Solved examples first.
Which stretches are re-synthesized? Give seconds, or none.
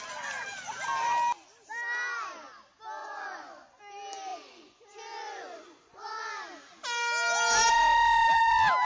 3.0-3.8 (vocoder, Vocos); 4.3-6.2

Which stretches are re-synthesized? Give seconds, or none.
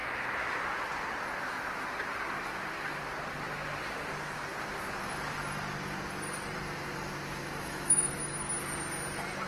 7.4-8.2 (autoencoder, DAC-VAE)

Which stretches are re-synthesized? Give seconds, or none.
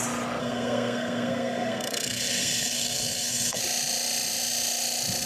0.4-3.6 (codec, SNAC)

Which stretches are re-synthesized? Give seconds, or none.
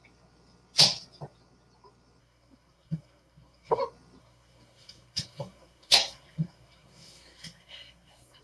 2.2-3.8 (codec, SNAC); 4.2-8.4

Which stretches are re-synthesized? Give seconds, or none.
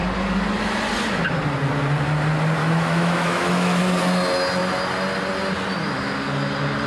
2.6-3.8 (autoencoder, DAC-VAE)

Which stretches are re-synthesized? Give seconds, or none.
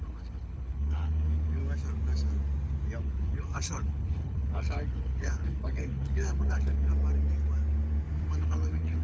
0.0-1.6 (codec, HILCodec); 3.0-6.9; 8.4-9.0